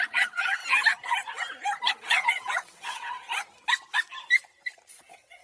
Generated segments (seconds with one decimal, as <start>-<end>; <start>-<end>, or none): 0.0-0.6; 1.9-3.3; 4.9-5.4